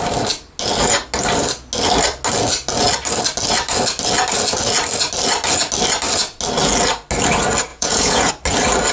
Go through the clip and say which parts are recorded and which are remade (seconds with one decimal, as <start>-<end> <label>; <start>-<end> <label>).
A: 0.0-7.7 recorded; 7.7-8.3 remade; 8.3-8.9 recorded